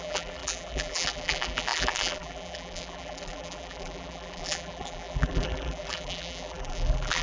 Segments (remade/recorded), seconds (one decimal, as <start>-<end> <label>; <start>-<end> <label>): 0.0-7.2 remade